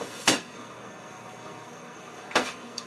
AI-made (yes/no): yes